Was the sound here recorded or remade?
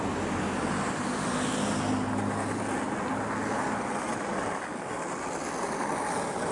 recorded